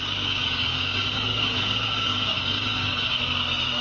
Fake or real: fake